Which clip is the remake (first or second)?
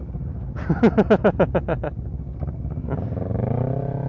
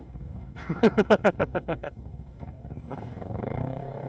second